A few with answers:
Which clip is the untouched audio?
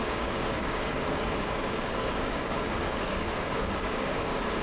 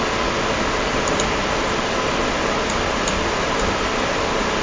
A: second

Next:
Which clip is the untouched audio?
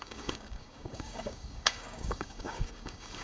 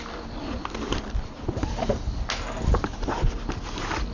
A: second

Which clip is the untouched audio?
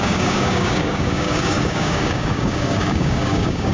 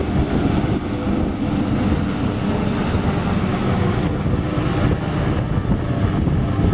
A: second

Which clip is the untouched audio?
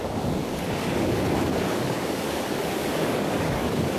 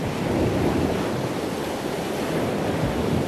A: second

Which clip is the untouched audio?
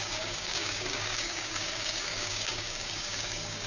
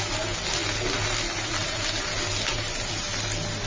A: second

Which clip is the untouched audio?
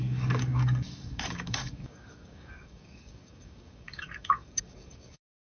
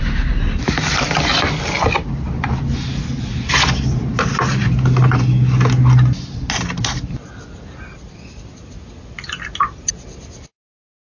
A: second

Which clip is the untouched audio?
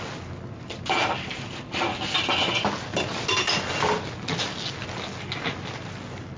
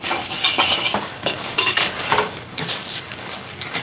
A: first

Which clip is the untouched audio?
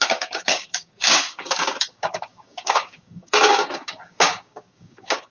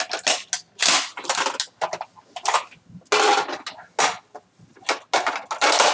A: second